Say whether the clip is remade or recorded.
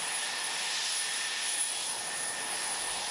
recorded